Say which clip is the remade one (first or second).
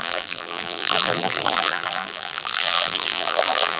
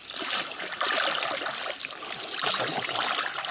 first